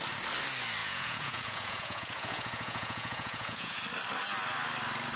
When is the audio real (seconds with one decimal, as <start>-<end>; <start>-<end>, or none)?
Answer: 0.0-0.8; 3.8-5.2